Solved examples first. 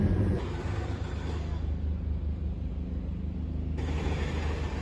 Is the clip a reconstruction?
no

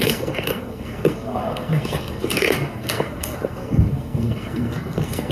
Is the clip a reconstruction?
yes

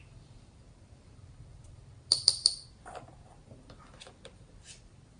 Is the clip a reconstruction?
yes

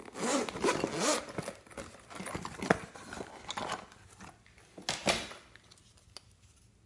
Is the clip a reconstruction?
no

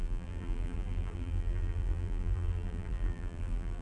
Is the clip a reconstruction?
yes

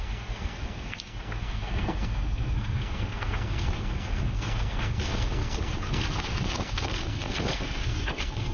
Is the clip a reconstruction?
yes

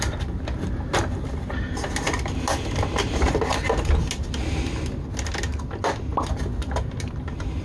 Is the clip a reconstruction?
no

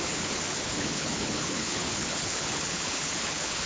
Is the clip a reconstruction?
yes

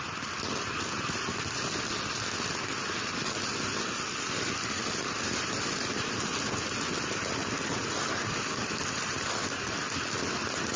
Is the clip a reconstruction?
no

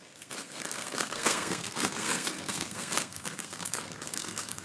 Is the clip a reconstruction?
yes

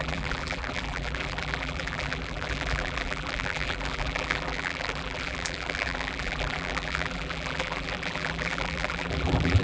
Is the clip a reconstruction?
yes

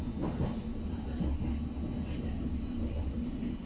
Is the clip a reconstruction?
no